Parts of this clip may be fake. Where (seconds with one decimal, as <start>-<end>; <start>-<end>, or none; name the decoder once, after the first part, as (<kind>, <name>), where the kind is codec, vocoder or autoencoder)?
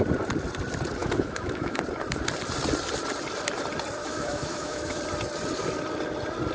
1.0-1.8 (autoencoder, DAC-VAE); 4.0-5.0